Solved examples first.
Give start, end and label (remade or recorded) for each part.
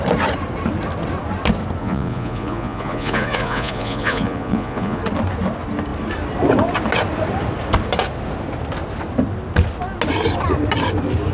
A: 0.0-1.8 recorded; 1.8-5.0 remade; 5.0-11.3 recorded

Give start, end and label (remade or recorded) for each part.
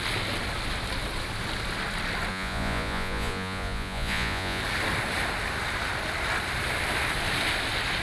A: 0.0-2.3 recorded; 2.3-4.6 remade; 4.6-8.0 recorded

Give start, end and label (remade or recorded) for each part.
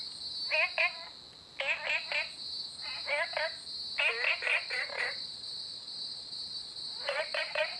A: 0.0-4.5 recorded; 4.5-7.8 remade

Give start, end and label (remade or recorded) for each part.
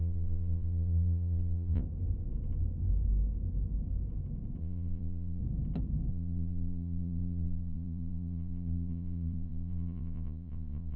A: 0.0-1.8 remade; 1.8-4.6 recorded; 4.6-5.4 remade; 5.4-6.1 recorded; 6.1-11.0 remade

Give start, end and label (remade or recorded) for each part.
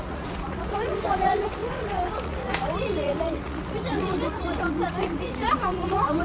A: 0.0-6.2 remade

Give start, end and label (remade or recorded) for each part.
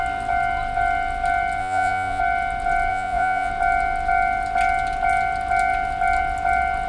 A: 0.0-1.6 recorded; 1.6-2.2 remade; 2.2-2.9 recorded; 2.9-3.5 remade; 3.5-6.9 recorded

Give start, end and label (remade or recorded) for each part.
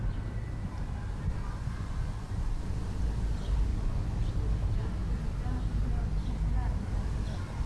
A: 0.0-1.4 recorded; 1.4-2.6 remade; 2.6-3.7 recorded; 3.7-4.3 remade; 4.3-7.7 recorded